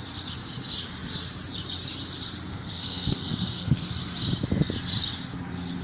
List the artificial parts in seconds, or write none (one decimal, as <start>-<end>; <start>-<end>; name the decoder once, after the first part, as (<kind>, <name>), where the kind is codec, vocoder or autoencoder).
2.5-3.9 (codec, SNAC)